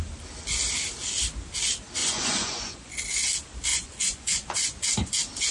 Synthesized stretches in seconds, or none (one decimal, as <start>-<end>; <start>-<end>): 2.0-3.0; 3.7-4.8